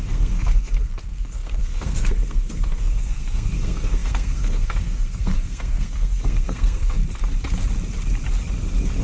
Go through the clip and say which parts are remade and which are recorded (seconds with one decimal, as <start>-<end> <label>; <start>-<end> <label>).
0.0-7.0 remade; 7.0-9.0 recorded